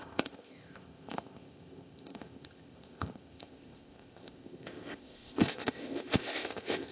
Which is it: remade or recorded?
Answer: remade